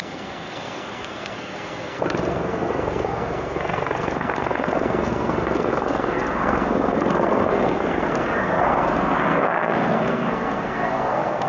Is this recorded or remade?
remade